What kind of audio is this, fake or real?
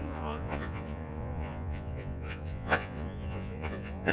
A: fake